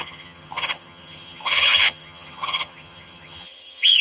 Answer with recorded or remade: remade